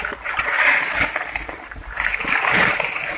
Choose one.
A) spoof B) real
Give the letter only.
A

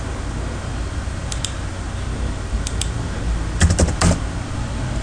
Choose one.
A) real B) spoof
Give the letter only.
A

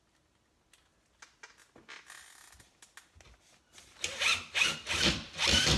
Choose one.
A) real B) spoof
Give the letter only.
A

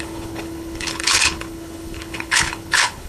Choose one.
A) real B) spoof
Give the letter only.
B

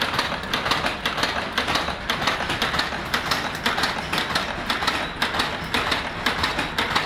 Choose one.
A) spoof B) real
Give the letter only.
B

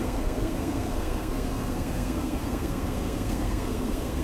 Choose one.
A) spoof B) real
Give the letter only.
A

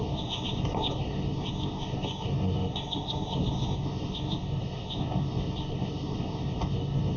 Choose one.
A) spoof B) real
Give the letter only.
A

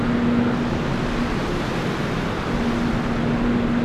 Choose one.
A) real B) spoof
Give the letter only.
A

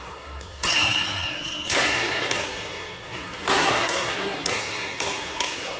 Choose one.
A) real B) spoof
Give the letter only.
B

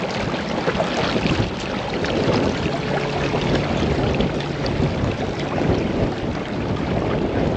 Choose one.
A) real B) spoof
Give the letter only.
A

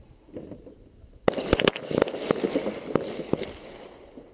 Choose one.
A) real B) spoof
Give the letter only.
A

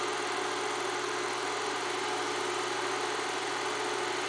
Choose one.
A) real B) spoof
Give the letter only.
A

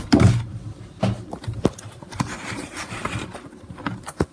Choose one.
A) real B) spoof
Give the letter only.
B